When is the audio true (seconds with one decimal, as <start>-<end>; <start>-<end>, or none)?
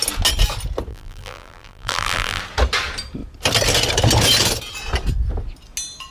0.0-0.9; 2.4-6.1